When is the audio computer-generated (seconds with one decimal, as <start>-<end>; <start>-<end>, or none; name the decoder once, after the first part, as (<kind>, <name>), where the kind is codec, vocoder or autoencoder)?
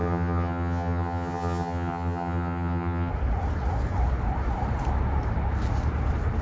0.0-3.1 (vocoder, HiFi-GAN)